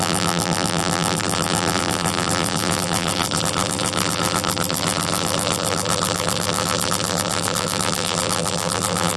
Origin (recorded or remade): remade